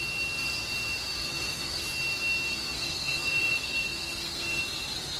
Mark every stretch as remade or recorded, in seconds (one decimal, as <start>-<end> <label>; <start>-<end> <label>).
0.0-1.2 recorded; 1.2-1.8 remade; 1.8-2.5 recorded; 2.5-4.6 remade; 4.6-5.2 recorded